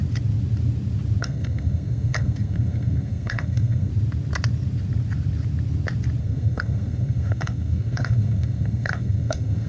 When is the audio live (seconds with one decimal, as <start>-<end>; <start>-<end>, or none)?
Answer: 0.0-1.2; 3.9-6.2